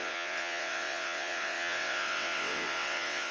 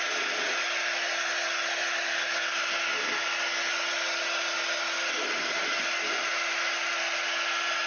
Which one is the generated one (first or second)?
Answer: first